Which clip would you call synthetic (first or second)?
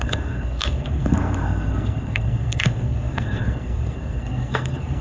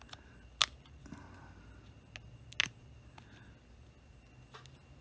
first